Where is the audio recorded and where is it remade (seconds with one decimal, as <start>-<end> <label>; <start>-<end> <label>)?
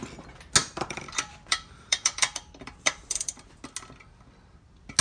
0.0-0.6 recorded; 0.6-3.6 remade; 3.6-5.0 recorded